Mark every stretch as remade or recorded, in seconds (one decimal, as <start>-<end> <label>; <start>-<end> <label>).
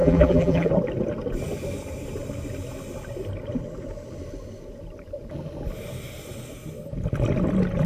0.0-0.7 remade; 0.7-7.9 recorded